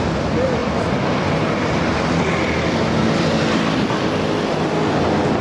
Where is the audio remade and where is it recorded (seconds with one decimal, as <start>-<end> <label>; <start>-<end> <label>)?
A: 0.0-0.6 recorded; 0.6-2.2 remade; 2.2-5.4 recorded